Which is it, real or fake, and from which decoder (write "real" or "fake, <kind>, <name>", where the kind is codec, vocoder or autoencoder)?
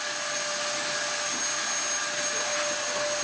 real